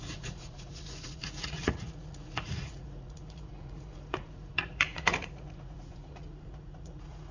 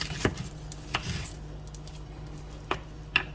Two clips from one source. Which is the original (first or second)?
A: second